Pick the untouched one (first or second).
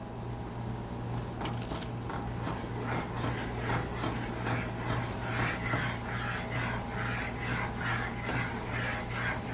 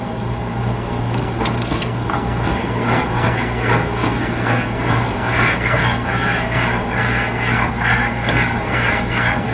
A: first